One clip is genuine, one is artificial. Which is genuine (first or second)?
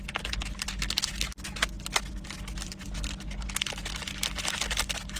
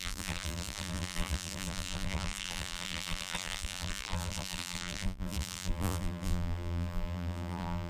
first